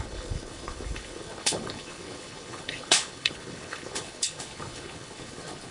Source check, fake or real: fake